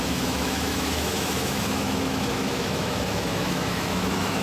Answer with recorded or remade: remade